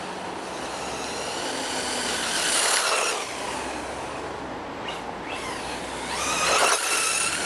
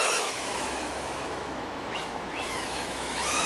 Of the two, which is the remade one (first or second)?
second